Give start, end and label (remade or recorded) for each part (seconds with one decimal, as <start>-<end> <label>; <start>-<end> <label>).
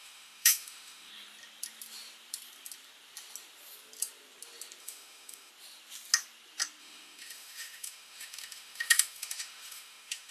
0.0-1.1 remade; 1.1-4.8 recorded; 4.8-5.5 remade; 5.5-6.8 recorded; 6.8-10.3 remade